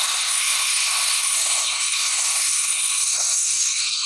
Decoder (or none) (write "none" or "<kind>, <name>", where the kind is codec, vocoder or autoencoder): codec, SNAC